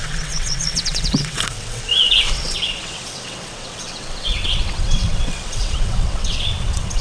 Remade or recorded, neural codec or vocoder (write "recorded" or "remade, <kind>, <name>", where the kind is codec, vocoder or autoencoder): remade, vocoder, WaveNeXt